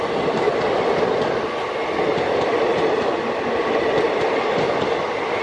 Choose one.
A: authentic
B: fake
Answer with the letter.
A